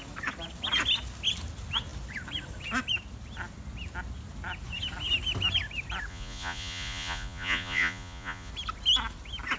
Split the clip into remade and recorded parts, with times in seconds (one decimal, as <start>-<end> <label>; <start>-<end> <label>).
0.0-6.1 recorded; 6.1-8.5 remade; 8.5-9.6 recorded